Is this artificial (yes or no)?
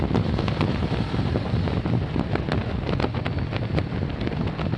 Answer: no